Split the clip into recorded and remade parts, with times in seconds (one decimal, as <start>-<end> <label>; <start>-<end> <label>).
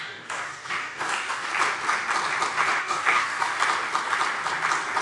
0.0-1.5 remade; 1.5-2.8 recorded; 2.8-3.5 remade; 3.5-5.0 recorded